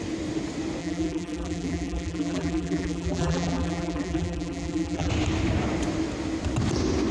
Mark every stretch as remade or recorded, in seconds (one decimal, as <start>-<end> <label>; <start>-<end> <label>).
0.0-0.8 recorded; 0.8-5.1 remade; 5.1-7.1 recorded